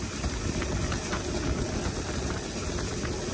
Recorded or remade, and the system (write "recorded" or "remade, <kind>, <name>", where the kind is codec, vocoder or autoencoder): recorded